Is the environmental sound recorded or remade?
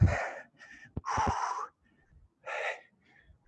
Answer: recorded